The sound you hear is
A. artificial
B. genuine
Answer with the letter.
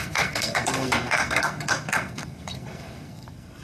A